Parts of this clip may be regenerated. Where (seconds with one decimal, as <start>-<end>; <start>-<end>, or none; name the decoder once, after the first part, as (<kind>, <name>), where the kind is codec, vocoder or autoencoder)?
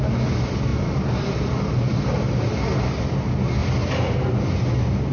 none